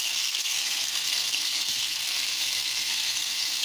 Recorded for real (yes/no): no